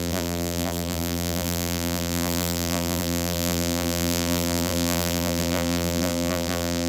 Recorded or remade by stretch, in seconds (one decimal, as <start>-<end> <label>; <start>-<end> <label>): 0.0-6.9 remade